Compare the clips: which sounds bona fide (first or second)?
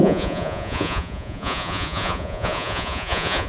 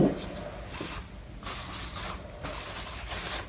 second